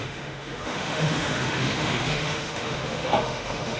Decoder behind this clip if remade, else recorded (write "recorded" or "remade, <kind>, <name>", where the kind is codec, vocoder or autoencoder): remade, autoencoder, DAC-VAE